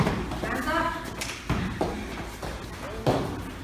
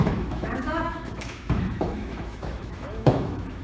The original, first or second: first